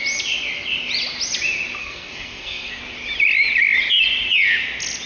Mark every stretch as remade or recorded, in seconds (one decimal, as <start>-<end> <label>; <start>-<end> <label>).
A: 0.0-1.8 recorded; 1.8-2.8 remade; 2.8-5.1 recorded